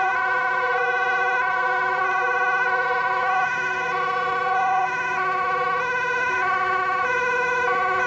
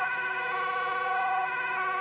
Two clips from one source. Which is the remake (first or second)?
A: second